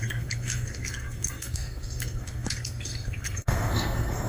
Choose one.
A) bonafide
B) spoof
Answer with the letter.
B